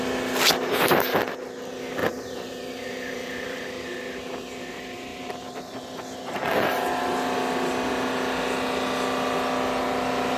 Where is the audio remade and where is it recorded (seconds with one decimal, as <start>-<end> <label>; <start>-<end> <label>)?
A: 0.0-2.0 recorded; 2.0-3.6 remade; 3.6-5.1 recorded; 5.1-5.8 remade; 5.8-10.4 recorded